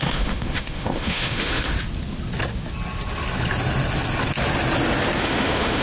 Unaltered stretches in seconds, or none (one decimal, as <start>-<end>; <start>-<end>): 1.7-5.2